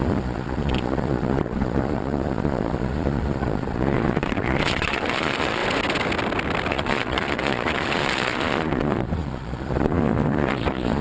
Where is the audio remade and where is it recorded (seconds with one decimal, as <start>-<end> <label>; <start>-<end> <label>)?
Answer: 0.0-5.6 remade; 5.6-6.7 recorded; 6.7-11.0 remade